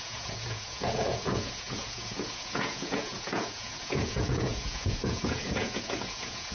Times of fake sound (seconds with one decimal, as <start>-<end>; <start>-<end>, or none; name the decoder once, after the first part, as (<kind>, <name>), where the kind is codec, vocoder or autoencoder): 0.0-6.5 (vocoder, Vocos)